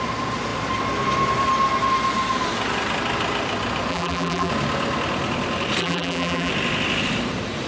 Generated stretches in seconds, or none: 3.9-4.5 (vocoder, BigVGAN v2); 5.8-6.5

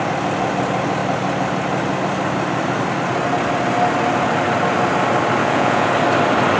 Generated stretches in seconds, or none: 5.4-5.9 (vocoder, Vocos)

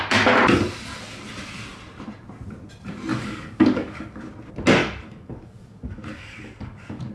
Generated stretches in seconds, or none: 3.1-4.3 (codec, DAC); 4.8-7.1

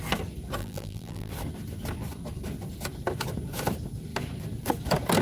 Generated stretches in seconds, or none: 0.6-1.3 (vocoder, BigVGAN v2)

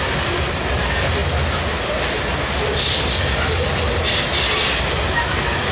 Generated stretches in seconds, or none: none

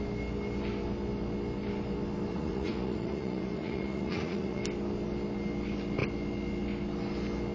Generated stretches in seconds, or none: 2.3-4.6 (vocoder, Vocos)

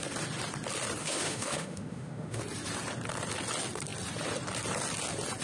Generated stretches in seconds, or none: 1.0-2.4 (autoencoder, DAC-VAE)